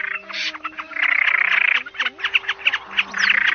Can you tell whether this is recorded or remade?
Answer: recorded